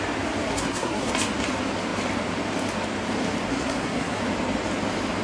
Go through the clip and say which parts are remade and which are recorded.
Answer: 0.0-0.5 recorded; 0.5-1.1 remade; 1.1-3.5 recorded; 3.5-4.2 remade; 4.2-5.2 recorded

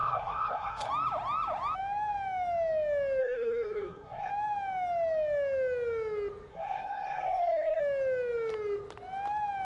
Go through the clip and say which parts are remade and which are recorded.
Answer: 0.0-0.9 remade; 0.9-3.2 recorded; 3.2-4.3 remade; 4.3-6.5 recorded; 6.5-7.8 remade; 7.8-9.6 recorded

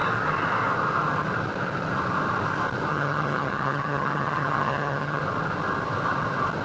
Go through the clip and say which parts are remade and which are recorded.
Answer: 0.0-2.9 recorded; 2.9-5.2 remade; 5.2-6.6 recorded

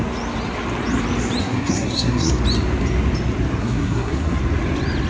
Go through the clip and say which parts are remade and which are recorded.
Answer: 0.0-1.4 recorded; 1.4-2.3 remade; 2.3-3.6 recorded; 3.6-4.4 remade; 4.4-5.1 recorded

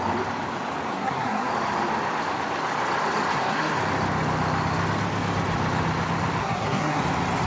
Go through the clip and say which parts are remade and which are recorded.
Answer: 0.0-0.9 recorded; 0.9-1.5 remade; 1.5-3.3 recorded; 3.3-3.8 remade; 3.8-6.4 recorded; 6.4-7.0 remade; 7.0-7.5 recorded

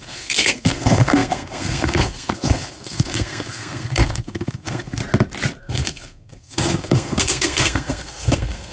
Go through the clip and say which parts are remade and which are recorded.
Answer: 0.0-5.0 remade; 5.0-5.6 recorded; 5.6-8.7 remade

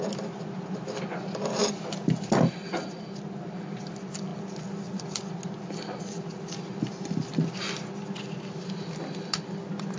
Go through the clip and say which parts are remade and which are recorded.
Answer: 0.0-10.0 recorded

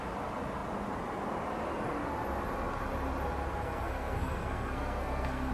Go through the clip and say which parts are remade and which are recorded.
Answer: 0.0-3.5 recorded; 3.5-5.5 remade